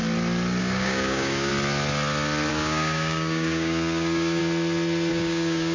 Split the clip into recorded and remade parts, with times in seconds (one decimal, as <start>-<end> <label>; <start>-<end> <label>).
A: 0.0-0.6 recorded; 0.6-1.5 remade; 1.5-2.5 recorded; 2.5-4.4 remade; 4.4-5.1 recorded; 5.1-5.7 remade